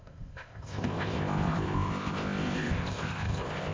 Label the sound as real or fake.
fake